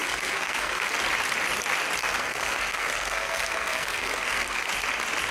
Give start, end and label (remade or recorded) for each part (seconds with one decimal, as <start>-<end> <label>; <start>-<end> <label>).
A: 0.0-0.9 remade; 0.9-2.0 recorded; 2.0-4.7 remade; 4.7-5.3 recorded